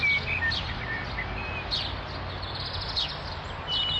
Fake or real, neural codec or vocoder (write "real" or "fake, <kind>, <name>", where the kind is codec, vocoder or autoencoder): real